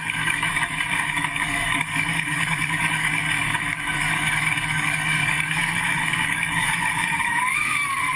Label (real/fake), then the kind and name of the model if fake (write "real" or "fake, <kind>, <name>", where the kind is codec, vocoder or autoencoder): fake, codec, DAC